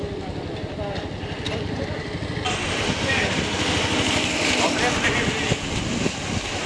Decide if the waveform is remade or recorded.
recorded